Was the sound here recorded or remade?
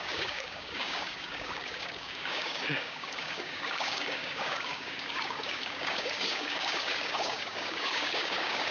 remade